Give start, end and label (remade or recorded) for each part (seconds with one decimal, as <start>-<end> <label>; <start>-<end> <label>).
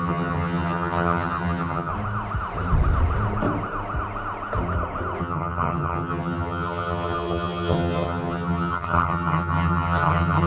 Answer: 0.0-1.9 remade; 1.9-5.2 recorded; 5.2-10.5 remade